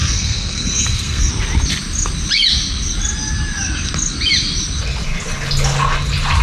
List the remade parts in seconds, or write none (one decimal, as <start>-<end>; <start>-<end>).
0.0-1.3

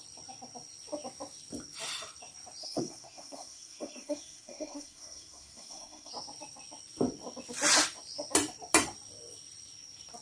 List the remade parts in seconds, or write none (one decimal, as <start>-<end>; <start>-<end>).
2.6-6.1

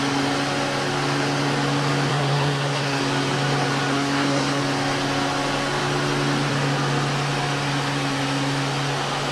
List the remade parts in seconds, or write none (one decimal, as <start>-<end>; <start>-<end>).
2.1-3.0; 3.9-4.6

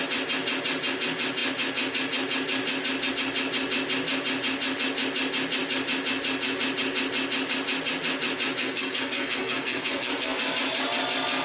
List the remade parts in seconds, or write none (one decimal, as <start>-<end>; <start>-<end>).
8.6-10.4

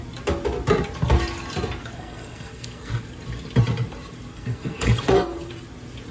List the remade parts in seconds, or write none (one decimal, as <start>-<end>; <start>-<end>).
1.8-3.0; 4.3-5.5